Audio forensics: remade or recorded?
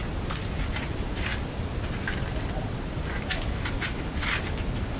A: recorded